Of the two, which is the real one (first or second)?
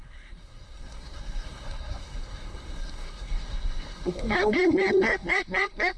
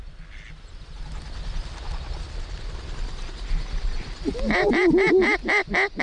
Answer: second